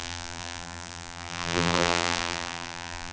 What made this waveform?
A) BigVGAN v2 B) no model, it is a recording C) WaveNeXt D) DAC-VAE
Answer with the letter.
A